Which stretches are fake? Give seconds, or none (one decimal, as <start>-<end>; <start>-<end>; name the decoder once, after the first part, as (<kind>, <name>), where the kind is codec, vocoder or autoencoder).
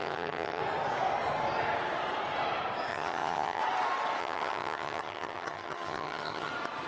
0.0-0.6 (vocoder, HiFi-GAN); 2.9-3.6; 4.2-6.5